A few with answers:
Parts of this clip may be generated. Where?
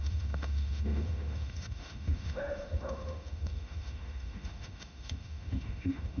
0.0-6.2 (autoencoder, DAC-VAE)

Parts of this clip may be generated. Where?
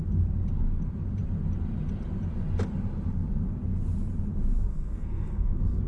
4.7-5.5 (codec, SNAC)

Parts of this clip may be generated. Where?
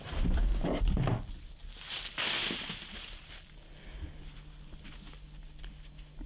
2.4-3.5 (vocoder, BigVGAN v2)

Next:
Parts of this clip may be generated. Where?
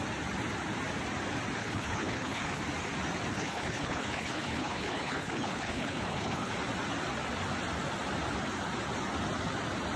1.6-2.6 (codec, HILCodec); 3.3-6.5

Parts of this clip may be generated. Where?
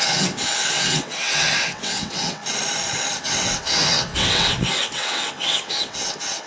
0.0-2.4 (vocoder, WaveNeXt); 3.2-6.5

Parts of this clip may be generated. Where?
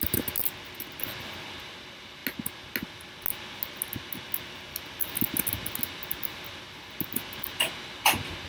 none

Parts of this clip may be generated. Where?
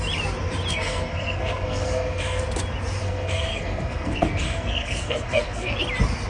0.7-2.4 (codec, SNAC); 3.0-5.7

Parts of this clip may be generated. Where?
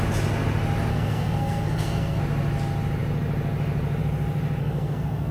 0.9-2.2 (codec, SNAC); 4.6-5.3